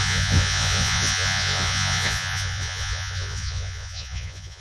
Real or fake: fake